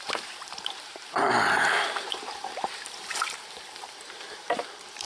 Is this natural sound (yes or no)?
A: no